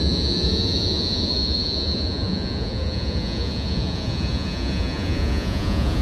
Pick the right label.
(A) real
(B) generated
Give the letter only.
B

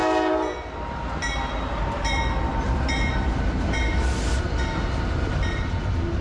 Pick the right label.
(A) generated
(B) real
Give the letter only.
B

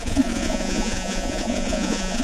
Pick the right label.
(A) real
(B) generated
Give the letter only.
B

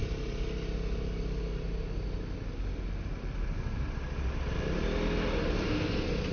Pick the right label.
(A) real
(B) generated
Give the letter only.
A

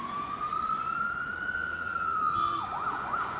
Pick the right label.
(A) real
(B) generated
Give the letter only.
B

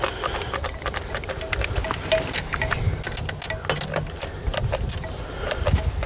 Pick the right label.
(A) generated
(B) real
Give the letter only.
B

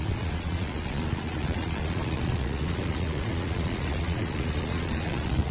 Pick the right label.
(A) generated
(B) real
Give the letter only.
A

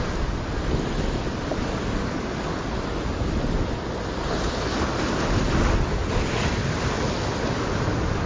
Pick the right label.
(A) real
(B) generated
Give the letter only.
A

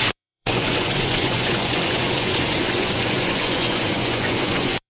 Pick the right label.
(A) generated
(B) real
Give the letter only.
A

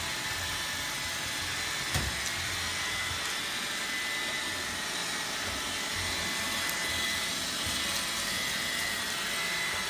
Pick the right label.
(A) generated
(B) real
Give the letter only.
B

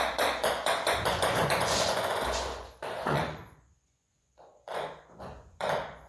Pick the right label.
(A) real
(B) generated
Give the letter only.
B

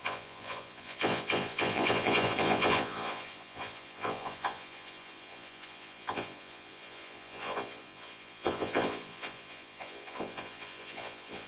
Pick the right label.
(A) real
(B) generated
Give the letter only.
B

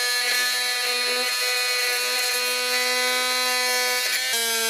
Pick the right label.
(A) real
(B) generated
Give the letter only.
A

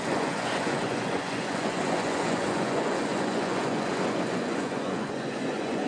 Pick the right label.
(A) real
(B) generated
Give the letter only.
B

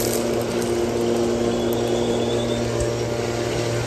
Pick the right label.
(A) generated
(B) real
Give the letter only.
B